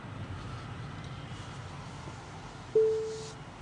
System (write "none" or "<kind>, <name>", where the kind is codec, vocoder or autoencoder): none